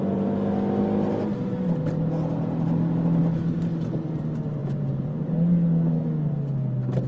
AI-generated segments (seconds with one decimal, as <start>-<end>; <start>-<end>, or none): 4.6-5.2